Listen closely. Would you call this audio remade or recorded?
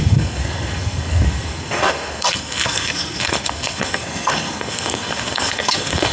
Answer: remade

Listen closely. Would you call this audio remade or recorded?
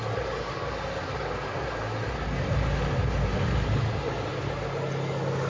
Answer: recorded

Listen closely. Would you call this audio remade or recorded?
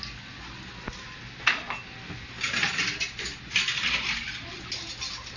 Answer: recorded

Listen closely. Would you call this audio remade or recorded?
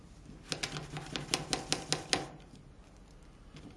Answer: recorded